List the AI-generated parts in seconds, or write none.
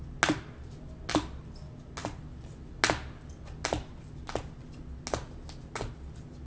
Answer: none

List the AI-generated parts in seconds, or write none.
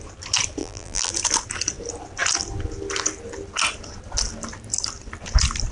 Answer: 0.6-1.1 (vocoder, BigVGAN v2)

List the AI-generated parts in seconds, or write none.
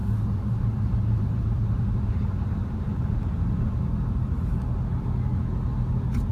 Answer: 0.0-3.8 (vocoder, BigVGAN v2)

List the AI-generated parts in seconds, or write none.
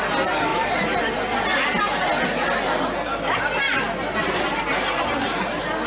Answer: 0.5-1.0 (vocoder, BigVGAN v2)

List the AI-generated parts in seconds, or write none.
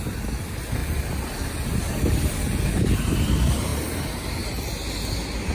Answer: none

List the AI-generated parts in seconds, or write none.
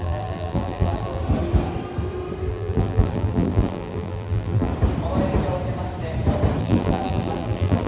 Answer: 0.0-1.2 (vocoder, BigVGAN v2); 2.5-4.7; 6.6-7.9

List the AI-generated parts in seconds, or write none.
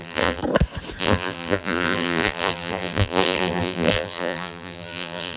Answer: 0.0-0.4 (vocoder, BigVGAN v2); 1.0-5.4